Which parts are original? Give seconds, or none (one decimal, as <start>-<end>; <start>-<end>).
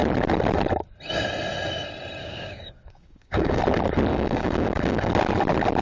0.0-2.2; 3.6-4.1; 5.1-5.8